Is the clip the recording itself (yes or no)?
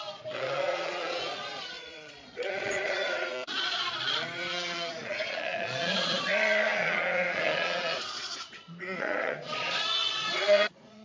no